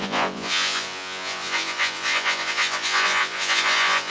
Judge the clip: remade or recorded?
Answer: remade